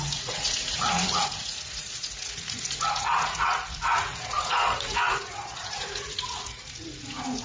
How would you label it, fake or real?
fake